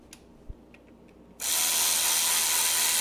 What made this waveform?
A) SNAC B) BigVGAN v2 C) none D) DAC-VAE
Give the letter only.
C